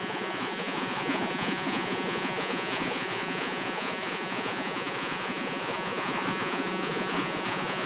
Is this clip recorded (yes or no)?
no